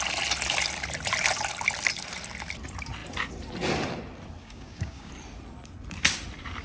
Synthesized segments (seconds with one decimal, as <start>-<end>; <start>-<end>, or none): 4.4-5.1